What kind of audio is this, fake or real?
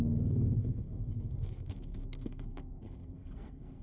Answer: fake